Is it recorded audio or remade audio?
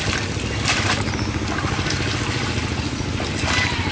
recorded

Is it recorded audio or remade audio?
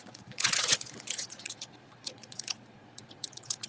remade